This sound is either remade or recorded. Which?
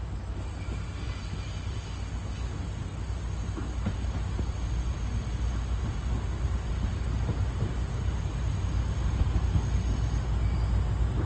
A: recorded